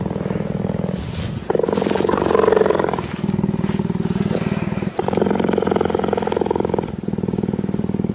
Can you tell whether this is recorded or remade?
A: recorded